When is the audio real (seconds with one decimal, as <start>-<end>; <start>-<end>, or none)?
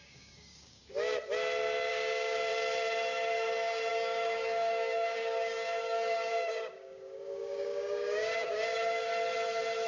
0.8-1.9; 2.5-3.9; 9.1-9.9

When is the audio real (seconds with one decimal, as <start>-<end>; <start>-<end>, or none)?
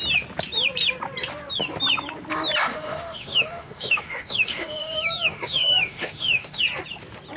0.0-2.7; 6.6-7.4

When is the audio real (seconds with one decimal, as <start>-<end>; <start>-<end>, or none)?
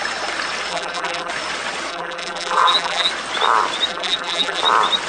0.0-0.7; 1.3-1.9; 3.1-3.9; 4.6-5.1